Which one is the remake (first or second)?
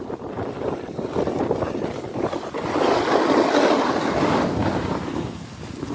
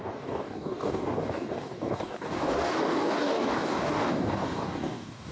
second